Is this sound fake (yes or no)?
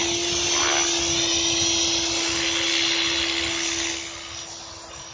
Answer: no